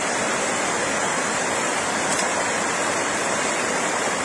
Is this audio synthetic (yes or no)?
no